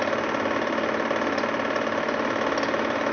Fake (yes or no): no